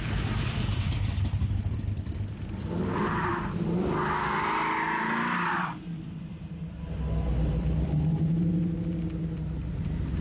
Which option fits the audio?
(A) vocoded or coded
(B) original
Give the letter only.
B